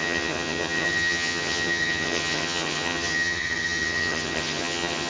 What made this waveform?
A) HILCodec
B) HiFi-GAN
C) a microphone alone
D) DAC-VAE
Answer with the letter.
B